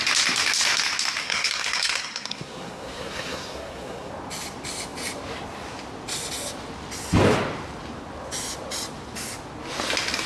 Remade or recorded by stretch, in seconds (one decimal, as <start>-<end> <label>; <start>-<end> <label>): 0.0-1.2 recorded; 1.2-4.1 remade; 4.1-10.3 recorded